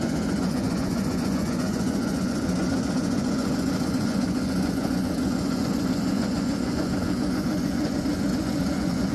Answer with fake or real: fake